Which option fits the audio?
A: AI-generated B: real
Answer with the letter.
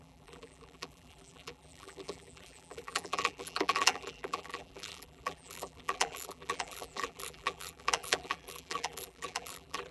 A